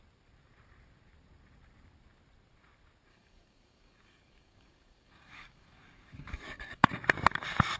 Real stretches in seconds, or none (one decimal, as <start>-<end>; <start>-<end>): 0.0-3.1; 6.9-7.8